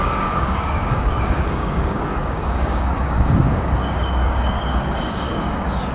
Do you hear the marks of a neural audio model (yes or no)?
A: yes